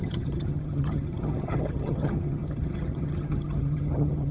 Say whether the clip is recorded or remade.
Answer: remade